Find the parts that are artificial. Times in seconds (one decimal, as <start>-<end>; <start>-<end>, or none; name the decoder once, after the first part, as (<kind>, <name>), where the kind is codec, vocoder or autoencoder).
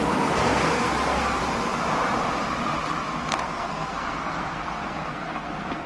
0.0-1.4 (codec, SNAC); 3.2-5.9